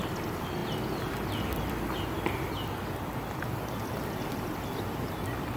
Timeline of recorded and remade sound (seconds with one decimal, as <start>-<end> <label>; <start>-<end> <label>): 0.0-5.6 recorded